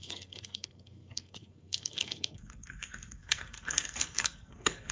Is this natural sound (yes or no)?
no